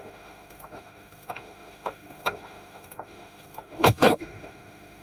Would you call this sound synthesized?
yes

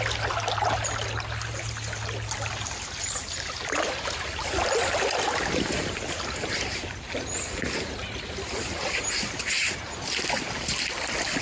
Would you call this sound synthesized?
no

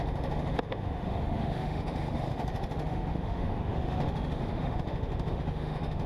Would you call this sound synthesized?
yes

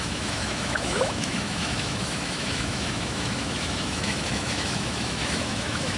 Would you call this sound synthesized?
yes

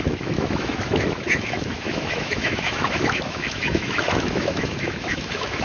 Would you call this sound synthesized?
yes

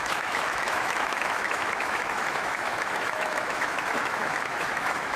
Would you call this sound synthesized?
yes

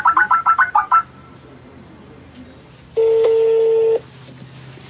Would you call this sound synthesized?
no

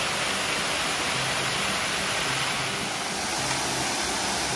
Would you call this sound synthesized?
no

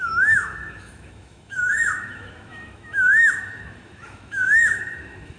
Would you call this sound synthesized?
yes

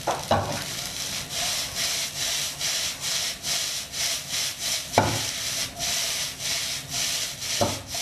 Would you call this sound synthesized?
no